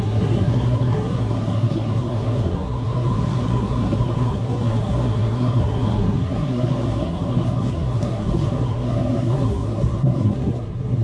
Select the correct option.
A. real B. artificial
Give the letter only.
B